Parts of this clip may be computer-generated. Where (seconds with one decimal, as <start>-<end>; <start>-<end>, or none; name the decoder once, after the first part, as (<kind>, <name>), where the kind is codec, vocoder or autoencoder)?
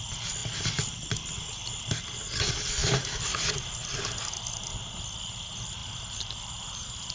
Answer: 5.8-7.1 (vocoder, BigVGAN v2)